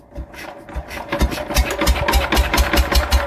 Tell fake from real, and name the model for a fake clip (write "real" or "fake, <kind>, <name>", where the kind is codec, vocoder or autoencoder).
real